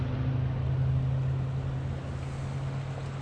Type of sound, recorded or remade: recorded